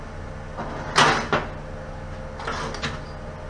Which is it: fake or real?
real